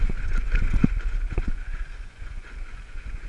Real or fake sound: fake